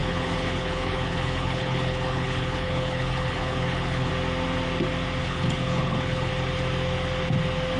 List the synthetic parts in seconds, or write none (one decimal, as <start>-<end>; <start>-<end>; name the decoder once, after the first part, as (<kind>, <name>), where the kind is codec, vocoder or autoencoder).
0.0-4.1 (codec, HILCodec); 5.2-6.3